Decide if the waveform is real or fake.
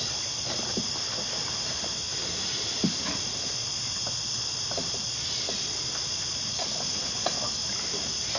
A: real